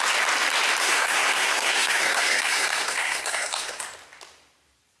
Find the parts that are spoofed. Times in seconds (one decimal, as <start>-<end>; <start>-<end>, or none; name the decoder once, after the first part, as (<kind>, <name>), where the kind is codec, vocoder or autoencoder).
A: 0.8-3.8 (codec, SNAC)